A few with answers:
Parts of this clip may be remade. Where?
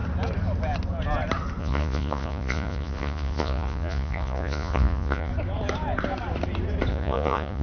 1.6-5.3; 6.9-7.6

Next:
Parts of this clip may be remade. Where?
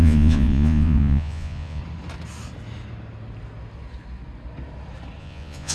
0.0-1.8; 5.2-5.7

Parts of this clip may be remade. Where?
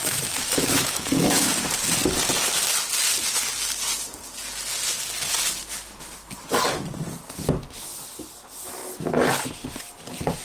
0.0-1.5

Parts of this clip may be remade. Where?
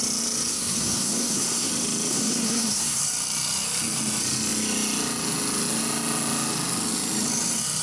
0.5-1.7; 2.1-3.0